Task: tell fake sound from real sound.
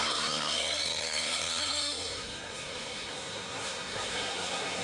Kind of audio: fake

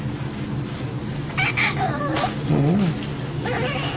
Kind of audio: real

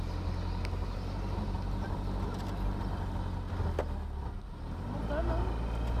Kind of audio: real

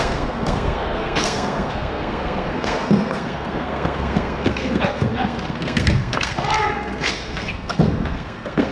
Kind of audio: fake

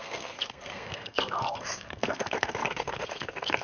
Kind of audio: fake